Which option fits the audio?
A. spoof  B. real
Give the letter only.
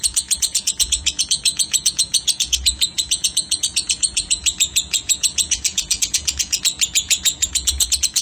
A